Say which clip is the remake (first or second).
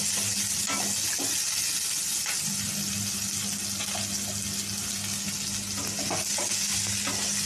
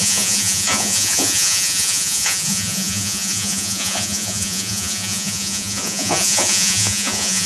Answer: second